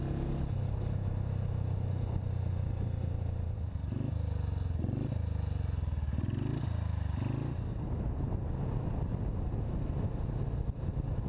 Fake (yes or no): no